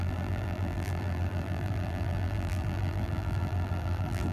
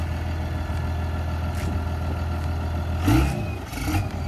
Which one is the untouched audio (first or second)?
second